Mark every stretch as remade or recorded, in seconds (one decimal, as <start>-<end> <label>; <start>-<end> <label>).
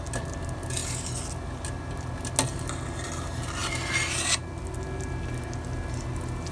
0.0-6.5 recorded